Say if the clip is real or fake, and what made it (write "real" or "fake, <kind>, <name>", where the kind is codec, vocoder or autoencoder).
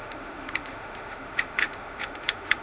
fake, autoencoder, DAC-VAE